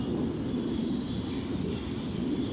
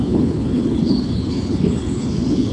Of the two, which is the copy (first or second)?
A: second